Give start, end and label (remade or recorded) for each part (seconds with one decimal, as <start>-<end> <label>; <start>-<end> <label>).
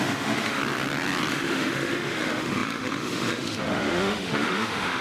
0.0-0.6 remade; 0.6-1.3 recorded; 1.3-5.0 remade